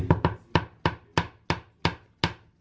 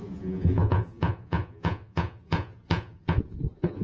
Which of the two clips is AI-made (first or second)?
second